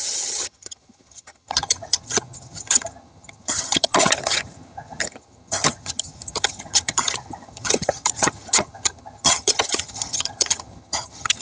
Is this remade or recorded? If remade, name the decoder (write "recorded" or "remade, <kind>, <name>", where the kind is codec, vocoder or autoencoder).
remade, vocoder, HiFi-GAN